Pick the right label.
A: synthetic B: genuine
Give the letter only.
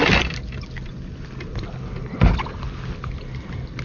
B